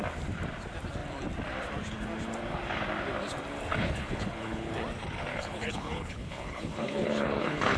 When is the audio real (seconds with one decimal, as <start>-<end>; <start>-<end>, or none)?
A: 0.0-3.7; 4.7-5.3